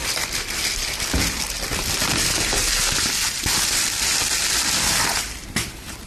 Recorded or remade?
remade